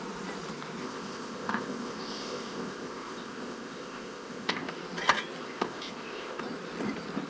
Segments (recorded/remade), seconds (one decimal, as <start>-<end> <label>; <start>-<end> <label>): 0.0-0.8 recorded; 0.8-4.7 remade; 4.7-5.4 recorded; 5.4-6.4 remade; 6.4-7.3 recorded